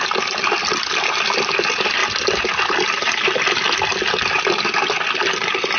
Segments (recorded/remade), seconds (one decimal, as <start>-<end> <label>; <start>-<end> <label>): 0.0-5.8 recorded